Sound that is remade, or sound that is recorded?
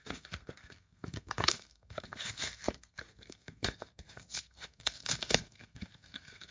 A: remade